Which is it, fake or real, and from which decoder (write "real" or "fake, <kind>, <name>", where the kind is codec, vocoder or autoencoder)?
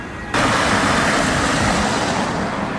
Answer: real